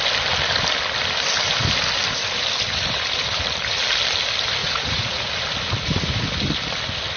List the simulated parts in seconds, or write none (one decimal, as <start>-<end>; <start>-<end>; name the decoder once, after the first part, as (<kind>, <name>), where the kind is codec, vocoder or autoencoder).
4.6-5.3 (vocoder, Vocos)